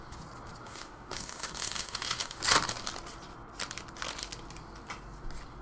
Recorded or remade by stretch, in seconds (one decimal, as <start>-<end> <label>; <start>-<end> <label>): 0.0-0.6 recorded; 0.6-2.4 remade; 2.4-5.6 recorded